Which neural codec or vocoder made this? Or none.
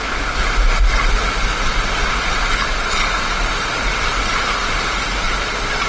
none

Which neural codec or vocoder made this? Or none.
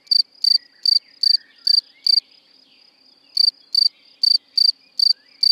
none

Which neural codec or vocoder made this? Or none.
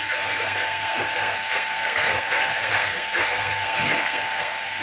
codec, SNAC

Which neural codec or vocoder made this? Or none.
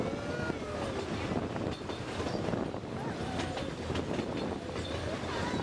none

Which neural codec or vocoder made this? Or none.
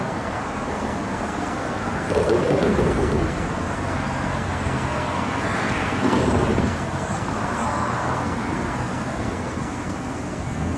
codec, SNAC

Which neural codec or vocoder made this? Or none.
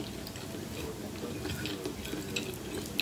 none